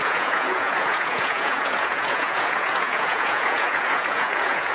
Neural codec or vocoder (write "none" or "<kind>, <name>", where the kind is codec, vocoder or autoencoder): vocoder, Vocos